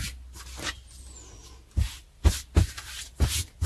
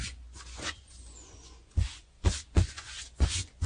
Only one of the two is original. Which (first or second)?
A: first